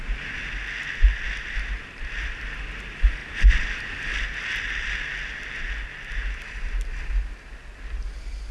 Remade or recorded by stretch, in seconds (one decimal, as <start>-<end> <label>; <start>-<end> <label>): 0.0-8.5 recorded